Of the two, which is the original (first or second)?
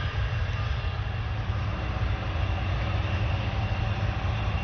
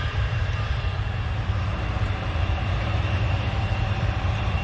first